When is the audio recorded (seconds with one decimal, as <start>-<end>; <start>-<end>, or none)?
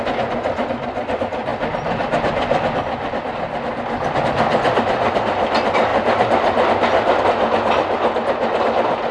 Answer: 0.0-9.1